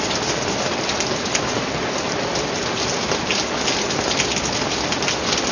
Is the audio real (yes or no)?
yes